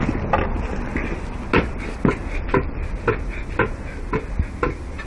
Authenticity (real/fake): real